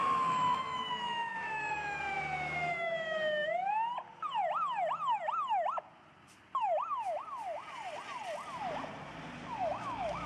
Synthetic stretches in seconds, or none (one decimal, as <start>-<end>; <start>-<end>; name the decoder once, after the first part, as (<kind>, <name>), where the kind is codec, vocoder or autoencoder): 0.0-3.7 (autoencoder, DAC-VAE); 9.6-10.3